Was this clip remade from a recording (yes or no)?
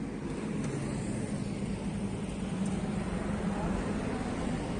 no